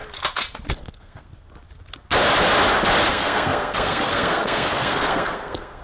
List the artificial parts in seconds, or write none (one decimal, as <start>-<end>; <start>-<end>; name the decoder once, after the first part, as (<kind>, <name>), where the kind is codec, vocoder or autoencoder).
0.7-1.3 (codec, SNAC); 3.1-5.8